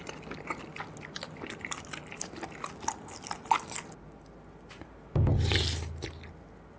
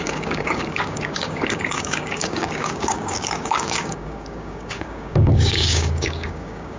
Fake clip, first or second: second